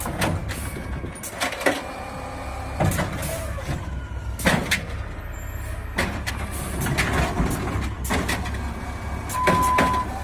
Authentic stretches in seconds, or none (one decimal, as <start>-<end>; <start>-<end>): 0.0-10.2